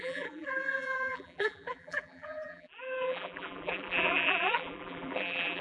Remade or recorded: remade